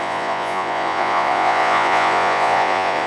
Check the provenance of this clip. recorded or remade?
remade